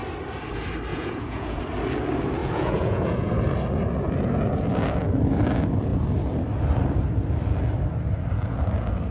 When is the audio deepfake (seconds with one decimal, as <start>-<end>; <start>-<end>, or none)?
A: 0.9-1.6; 2.4-3.3